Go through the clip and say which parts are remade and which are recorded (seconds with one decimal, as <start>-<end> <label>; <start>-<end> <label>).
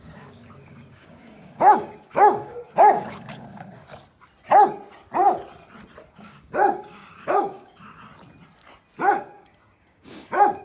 0.0-3.8 remade; 3.8-6.1 recorded; 6.1-8.1 remade; 8.1-9.1 recorded; 9.1-10.6 remade